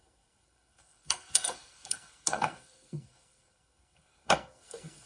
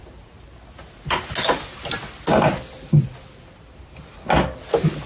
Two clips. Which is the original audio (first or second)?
second